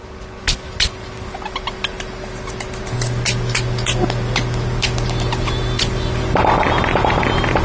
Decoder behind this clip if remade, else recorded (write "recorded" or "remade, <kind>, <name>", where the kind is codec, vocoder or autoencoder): recorded